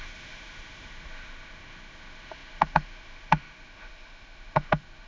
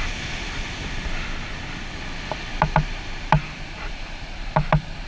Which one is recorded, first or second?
second